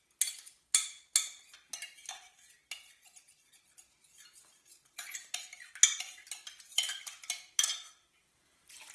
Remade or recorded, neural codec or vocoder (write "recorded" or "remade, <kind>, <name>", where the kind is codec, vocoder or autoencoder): recorded